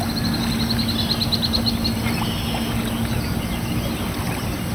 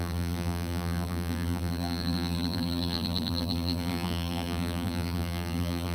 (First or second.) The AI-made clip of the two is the second